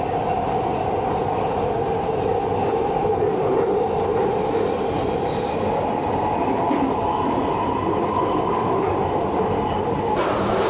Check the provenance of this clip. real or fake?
real